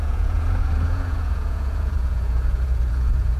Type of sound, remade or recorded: remade